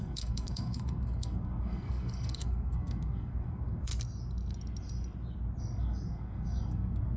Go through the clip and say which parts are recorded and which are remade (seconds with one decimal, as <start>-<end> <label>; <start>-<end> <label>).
0.0-3.9 remade; 3.9-5.6 recorded; 5.6-7.2 remade